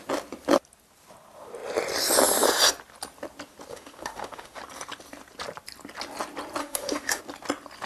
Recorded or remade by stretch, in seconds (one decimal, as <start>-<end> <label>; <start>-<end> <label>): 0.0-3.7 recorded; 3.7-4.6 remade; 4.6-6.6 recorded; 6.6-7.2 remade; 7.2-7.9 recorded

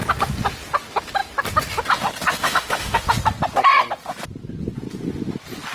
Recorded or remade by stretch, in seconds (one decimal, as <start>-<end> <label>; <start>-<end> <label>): 0.0-2.4 recorded; 2.4-3.0 remade; 3.0-5.7 recorded

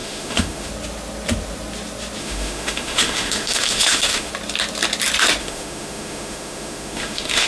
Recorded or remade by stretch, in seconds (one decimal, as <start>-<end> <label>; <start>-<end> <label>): 0.0-0.7 remade; 0.7-2.2 recorded; 2.2-4.3 remade; 4.3-5.4 recorded; 5.4-7.5 remade

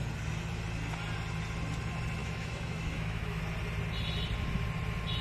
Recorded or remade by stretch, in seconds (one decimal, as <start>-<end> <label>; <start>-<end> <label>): 0.0-2.2 recorded; 2.2-3.4 remade; 3.4-5.2 recorded

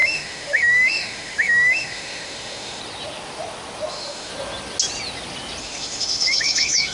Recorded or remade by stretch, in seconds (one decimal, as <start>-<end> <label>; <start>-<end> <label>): 0.0-2.8 remade; 2.8-3.9 recorded; 3.9-4.3 remade; 4.3-5.6 recorded; 5.6-6.9 remade

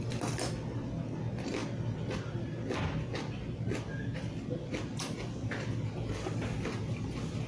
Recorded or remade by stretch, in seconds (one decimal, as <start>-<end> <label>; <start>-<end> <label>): 0.0-7.5 recorded